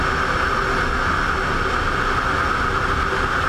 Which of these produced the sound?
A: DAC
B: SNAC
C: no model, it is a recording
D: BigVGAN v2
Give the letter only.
C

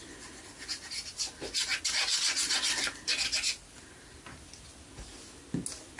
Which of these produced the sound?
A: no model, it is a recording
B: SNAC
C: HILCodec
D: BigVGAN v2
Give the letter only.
A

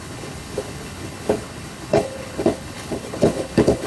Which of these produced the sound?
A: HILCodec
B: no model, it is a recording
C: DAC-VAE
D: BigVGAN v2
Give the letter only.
A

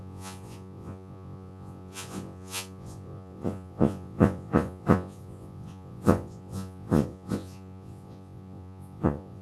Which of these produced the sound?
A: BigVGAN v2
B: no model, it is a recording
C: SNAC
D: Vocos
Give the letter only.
D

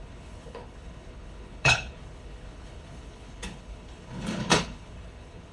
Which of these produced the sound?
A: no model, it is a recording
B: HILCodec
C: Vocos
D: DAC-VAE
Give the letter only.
B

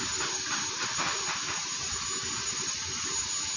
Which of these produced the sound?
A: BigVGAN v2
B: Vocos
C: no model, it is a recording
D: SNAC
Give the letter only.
C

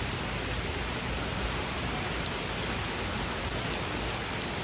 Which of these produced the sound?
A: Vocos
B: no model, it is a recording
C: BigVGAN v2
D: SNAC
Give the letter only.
B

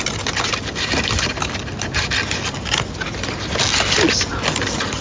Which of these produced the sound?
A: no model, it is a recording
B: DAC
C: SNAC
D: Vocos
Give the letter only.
A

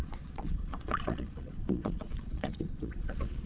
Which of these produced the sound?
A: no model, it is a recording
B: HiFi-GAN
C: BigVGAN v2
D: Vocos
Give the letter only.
D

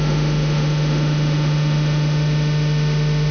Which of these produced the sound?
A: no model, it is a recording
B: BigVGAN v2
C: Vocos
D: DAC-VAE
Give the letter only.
D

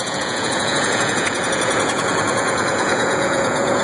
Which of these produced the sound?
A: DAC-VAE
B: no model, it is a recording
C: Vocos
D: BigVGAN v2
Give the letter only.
C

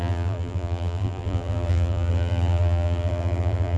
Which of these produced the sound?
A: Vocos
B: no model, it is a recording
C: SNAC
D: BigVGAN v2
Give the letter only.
D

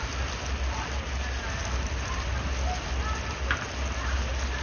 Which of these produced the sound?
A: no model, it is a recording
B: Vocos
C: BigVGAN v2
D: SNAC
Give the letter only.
A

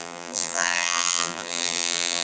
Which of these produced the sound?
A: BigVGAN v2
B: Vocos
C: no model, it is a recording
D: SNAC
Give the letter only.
A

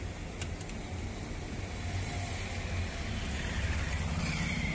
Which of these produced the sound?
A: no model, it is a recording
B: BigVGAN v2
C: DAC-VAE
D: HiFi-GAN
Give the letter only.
A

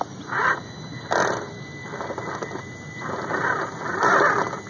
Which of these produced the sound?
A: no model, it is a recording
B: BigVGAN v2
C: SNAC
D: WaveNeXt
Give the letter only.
A